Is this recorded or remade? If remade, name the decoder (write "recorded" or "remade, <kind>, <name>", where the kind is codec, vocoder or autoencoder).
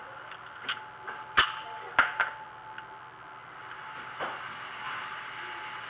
recorded